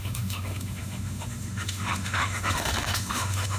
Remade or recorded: remade